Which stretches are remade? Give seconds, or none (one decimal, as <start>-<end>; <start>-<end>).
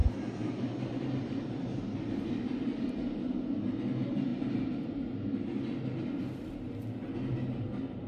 0.0-1.6; 4.3-4.9